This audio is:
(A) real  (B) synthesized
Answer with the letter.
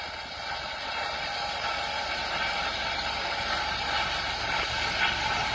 A